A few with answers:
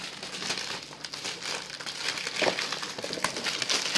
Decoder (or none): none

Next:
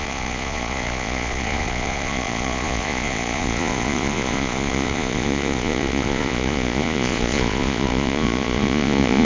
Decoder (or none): vocoder, Vocos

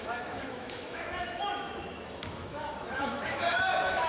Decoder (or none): autoencoder, DAC-VAE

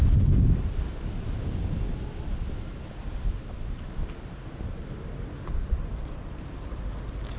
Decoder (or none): none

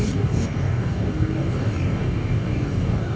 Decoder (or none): codec, DAC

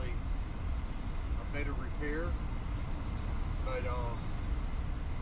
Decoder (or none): none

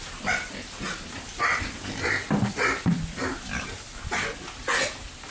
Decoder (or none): none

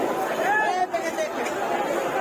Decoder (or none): none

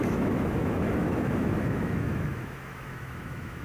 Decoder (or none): autoencoder, DAC-VAE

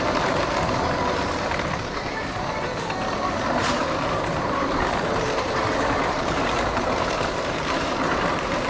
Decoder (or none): vocoder, BigVGAN v2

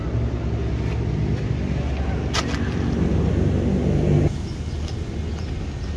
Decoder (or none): none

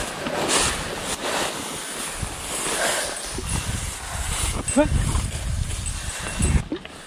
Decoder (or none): none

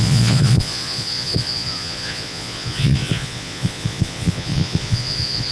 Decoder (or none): vocoder, Vocos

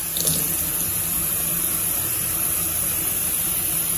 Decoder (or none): none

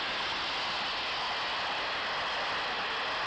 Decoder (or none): none